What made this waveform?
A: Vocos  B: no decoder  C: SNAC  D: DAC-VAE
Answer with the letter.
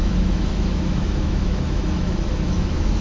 D